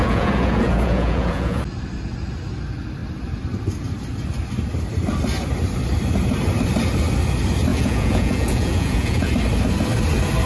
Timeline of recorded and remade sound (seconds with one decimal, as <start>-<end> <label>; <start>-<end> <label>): 0.0-1.6 remade; 1.6-7.7 recorded; 7.7-9.3 remade; 9.3-10.5 recorded

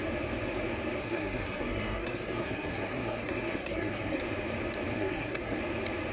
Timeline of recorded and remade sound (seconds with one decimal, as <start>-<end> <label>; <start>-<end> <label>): 0.0-1.0 recorded; 1.0-4.2 remade; 4.2-4.9 recorded; 4.9-5.6 remade; 5.6-6.1 recorded

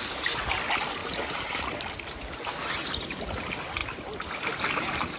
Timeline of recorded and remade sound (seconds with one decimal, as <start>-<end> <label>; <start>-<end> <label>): 0.0-1.0 recorded; 1.0-1.9 remade; 1.9-2.8 recorded; 2.8-3.4 remade; 3.4-5.2 recorded

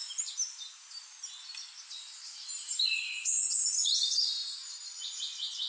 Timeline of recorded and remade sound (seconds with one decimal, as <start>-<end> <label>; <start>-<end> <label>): 0.0-3.4 remade; 3.4-5.7 recorded

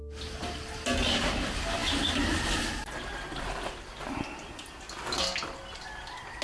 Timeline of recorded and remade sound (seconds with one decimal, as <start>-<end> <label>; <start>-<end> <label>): 0.0-6.4 recorded

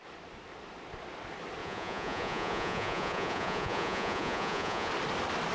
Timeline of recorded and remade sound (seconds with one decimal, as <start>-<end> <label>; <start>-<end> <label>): 0.0-1.6 recorded; 1.6-4.9 remade; 4.9-5.5 recorded

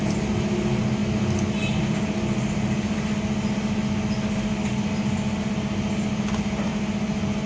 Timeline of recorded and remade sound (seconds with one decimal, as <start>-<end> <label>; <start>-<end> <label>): 0.0-7.5 recorded

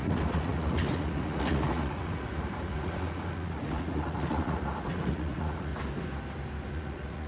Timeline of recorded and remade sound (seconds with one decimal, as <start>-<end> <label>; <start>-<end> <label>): 0.0-5.7 remade; 5.7-6.7 recorded; 6.7-7.3 remade